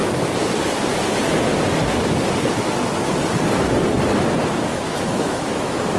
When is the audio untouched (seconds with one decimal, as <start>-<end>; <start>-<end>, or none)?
0.0-4.7